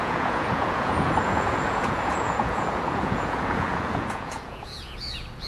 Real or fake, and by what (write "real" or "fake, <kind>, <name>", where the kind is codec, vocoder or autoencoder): fake, vocoder, Vocos